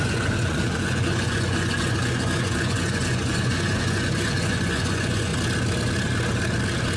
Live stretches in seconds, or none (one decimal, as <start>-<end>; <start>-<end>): 5.3-7.0